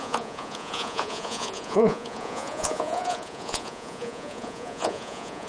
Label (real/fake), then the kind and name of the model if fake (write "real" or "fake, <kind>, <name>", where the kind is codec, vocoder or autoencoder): fake, vocoder, Vocos